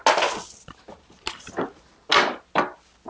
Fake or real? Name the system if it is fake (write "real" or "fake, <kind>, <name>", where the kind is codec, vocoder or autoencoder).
real